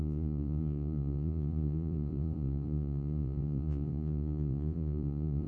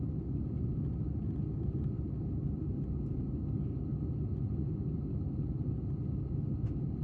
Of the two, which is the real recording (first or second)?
second